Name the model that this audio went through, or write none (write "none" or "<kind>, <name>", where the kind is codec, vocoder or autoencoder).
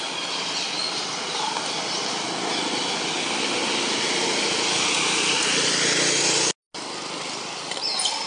none